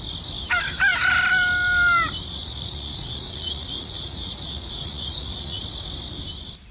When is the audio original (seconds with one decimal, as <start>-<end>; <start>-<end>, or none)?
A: 0.0-2.3; 5.6-6.7

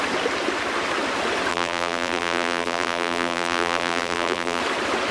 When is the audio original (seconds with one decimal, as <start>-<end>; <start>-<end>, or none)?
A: 0.0-1.5; 4.6-5.1

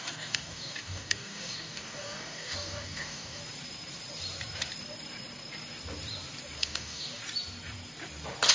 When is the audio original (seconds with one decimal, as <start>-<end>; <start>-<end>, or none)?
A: 3.4-6.6; 7.2-8.5

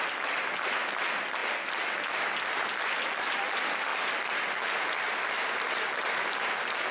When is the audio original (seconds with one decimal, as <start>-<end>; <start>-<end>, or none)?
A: 0.0-6.9

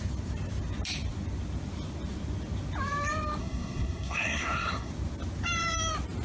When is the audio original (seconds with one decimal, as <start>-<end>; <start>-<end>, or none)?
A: 0.0-3.4; 4.9-6.2

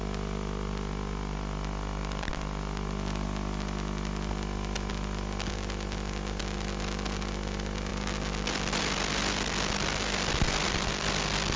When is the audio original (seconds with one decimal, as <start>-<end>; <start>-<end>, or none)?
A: 0.0-11.6

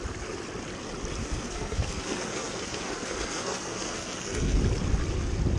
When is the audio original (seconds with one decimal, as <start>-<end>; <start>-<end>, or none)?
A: 0.0-1.2; 4.6-5.6